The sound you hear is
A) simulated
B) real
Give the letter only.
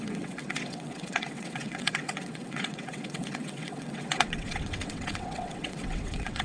A